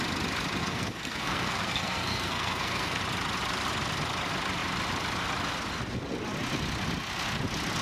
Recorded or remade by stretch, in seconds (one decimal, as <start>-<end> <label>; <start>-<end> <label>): 0.0-0.6 recorded; 0.6-3.0 remade; 3.0-7.8 recorded